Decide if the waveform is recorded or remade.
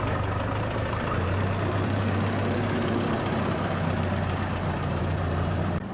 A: remade